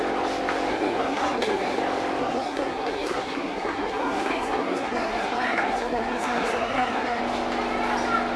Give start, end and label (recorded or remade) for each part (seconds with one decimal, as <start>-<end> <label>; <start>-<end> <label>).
0.0-0.7 recorded; 0.7-1.8 remade; 1.8-2.2 recorded; 2.2-7.2 remade; 7.2-8.4 recorded